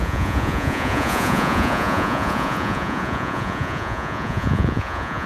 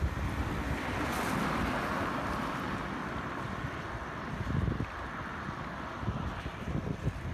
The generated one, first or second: first